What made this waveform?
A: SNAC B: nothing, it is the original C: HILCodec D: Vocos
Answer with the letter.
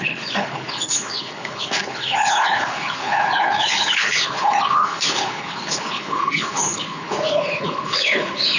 C